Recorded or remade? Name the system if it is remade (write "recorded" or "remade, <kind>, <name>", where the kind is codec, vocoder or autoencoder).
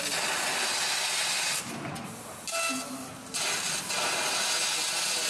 recorded